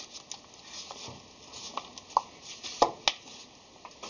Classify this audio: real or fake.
real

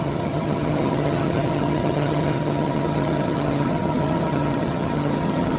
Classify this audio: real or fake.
fake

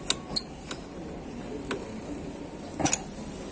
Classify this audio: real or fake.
real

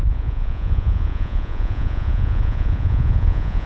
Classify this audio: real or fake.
fake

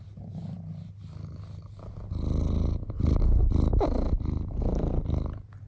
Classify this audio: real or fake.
real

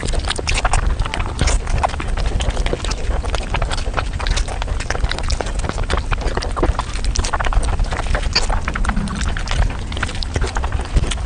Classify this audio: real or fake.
real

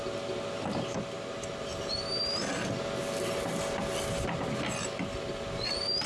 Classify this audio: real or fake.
real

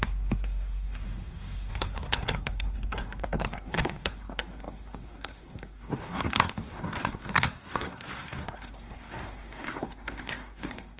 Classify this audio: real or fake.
fake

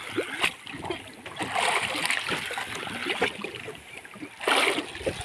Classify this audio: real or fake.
real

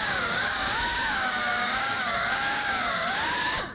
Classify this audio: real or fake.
fake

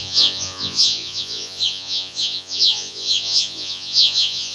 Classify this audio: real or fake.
fake